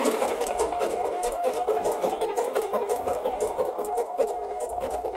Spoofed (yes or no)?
yes